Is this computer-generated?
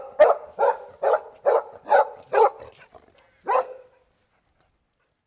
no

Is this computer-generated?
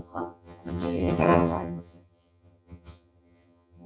yes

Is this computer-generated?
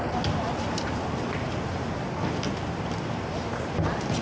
no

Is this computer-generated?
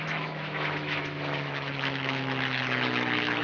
yes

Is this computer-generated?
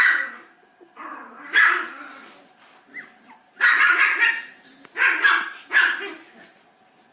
no